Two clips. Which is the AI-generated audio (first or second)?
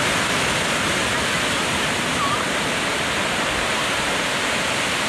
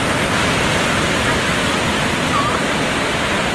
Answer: first